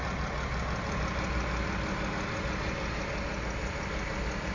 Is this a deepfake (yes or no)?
no